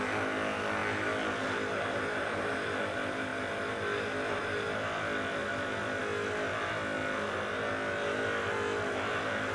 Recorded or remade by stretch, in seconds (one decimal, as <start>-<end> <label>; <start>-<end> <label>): 0.0-9.5 recorded